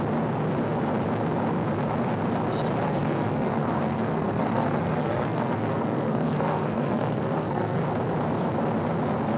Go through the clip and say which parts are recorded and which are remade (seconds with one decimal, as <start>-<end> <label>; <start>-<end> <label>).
0.0-2.9 recorded; 2.9-7.8 remade; 7.8-9.4 recorded